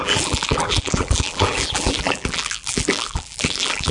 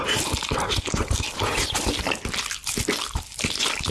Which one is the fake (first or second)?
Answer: first